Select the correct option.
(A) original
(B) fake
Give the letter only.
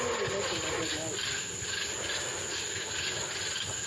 A